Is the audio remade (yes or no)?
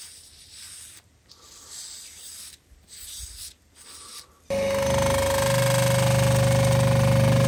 no